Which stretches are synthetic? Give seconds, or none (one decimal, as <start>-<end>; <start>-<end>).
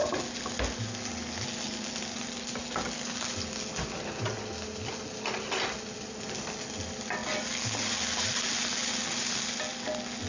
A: none